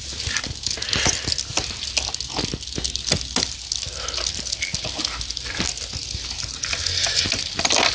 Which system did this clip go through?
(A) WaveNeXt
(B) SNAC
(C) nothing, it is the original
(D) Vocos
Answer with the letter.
C